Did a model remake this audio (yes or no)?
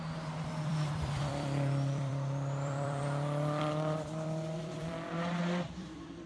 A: yes